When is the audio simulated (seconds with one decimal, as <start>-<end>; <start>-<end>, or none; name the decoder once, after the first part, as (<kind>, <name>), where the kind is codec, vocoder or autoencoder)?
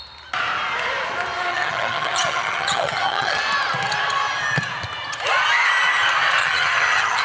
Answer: 1.5-3.4 (vocoder, HiFi-GAN); 6.4-7.2